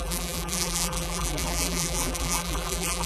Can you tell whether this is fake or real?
fake